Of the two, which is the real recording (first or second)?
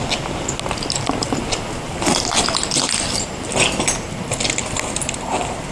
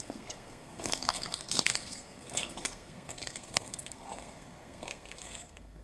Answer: first